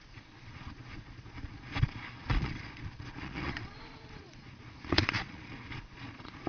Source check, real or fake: fake